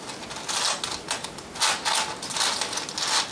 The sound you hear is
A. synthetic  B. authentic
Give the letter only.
B